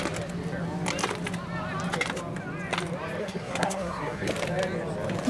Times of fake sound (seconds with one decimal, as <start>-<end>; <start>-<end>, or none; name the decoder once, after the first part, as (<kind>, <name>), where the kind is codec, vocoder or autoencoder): 3.2-4.3 (codec, SNAC)

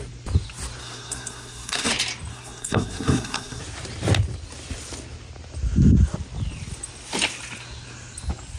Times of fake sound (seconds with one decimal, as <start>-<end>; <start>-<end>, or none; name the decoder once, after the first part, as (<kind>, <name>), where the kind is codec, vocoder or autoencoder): 0.8-1.9 (codec, SNAC); 2.3-3.6

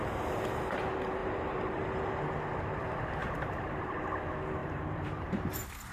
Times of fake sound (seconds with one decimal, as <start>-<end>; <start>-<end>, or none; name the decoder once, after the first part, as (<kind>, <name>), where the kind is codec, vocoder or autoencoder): 1.2-2.2 (vocoder, BigVGAN v2); 3.2-4.0; 4.6-5.5

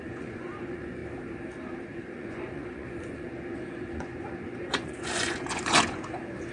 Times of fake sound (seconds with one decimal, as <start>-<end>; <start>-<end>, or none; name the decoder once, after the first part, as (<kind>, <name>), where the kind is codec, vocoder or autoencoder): 0.0-1.0 (vocoder, Vocos); 1.8-6.5

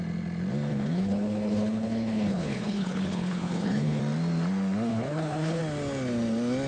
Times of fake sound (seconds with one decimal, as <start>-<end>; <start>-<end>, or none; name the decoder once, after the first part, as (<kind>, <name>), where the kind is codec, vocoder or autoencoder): 0.7-4.0 (codec, HILCodec); 4.9-5.6

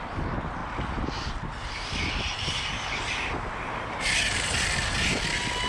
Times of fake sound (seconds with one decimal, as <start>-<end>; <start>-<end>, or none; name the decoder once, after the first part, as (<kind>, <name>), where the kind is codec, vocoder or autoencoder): none